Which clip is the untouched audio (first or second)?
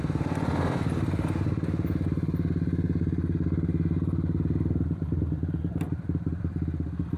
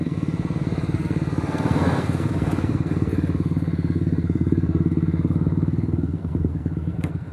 first